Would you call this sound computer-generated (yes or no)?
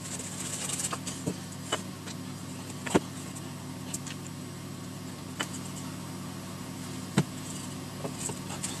no